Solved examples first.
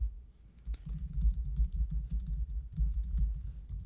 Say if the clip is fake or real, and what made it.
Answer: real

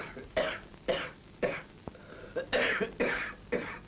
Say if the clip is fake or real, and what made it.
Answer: real